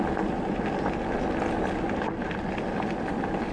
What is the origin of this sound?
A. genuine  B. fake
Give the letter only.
A